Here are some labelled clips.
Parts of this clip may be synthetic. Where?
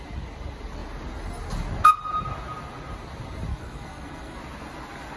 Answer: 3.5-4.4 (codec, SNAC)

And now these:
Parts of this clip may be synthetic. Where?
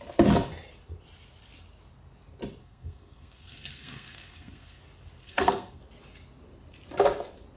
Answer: 2.6-4.8 (codec, SNAC); 5.2-5.8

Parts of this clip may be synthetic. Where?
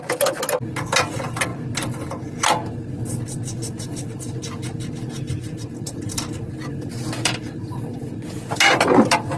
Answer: none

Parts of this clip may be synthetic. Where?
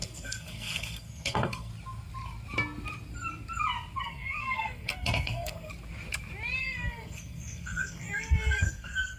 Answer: 0.0-1.7 (codec, SNAC); 4.0-5.7; 6.6-9.2